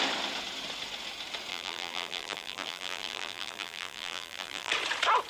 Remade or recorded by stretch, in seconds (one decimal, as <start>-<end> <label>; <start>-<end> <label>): 0.0-1.5 recorded; 1.5-4.7 remade; 4.7-5.3 recorded